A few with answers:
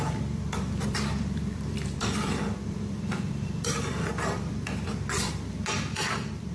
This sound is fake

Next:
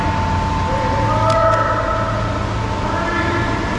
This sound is real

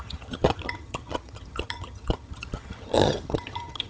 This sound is fake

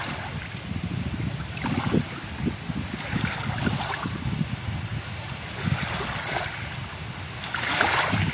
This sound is real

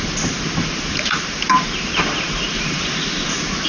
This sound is fake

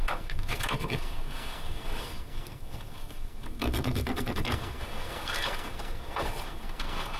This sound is fake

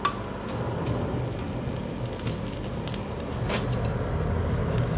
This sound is real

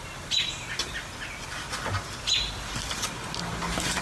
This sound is real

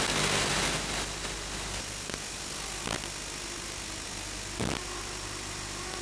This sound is real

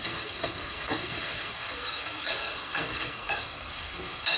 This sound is fake